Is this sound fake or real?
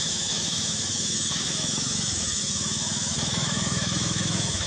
fake